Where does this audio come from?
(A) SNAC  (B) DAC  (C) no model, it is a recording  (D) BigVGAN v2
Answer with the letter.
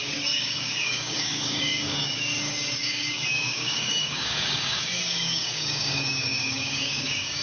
B